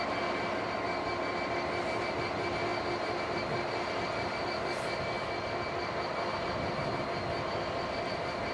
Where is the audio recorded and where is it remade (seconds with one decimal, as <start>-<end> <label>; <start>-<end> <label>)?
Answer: 0.0-8.5 recorded